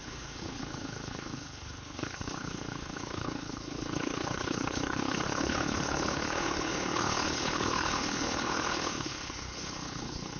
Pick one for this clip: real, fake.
fake